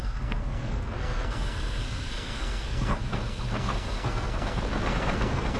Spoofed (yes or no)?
yes